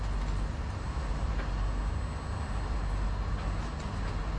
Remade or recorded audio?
recorded